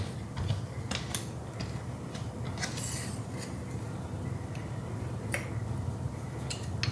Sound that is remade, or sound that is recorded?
recorded